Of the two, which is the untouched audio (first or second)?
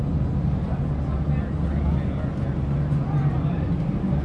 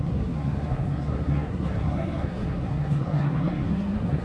first